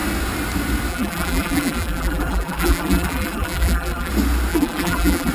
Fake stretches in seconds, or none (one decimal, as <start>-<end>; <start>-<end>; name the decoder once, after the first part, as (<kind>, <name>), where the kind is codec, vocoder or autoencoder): 0.9-4.1 (vocoder, BigVGAN v2); 4.5-5.3